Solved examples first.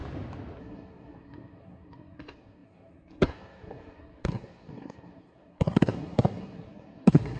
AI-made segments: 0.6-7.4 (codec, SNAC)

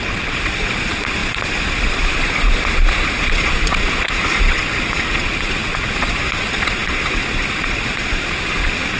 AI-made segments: 0.0-9.0 (vocoder, Vocos)